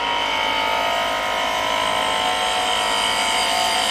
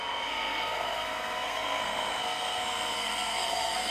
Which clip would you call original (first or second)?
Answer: first